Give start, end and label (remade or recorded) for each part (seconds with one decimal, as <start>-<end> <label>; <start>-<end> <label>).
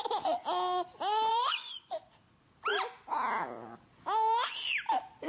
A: 0.0-1.3 recorded; 1.3-1.9 remade; 1.9-5.3 recorded